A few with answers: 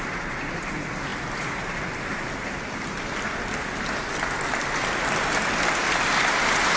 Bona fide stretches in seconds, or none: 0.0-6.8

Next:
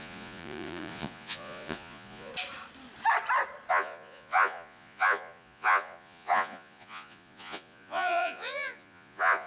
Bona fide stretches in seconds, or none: 2.3-3.7

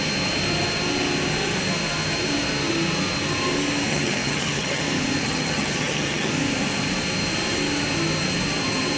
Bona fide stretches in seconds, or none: 0.0-3.9; 4.8-5.2; 6.3-9.0

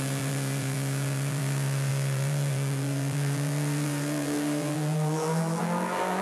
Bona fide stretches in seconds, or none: none

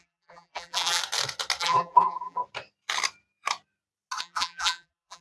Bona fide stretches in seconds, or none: 1.0-1.6; 2.4-4.2

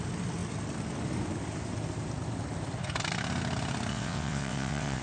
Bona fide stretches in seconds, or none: 0.0-3.9